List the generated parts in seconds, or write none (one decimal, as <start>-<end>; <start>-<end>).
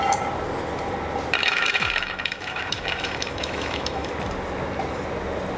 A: 1.4-4.1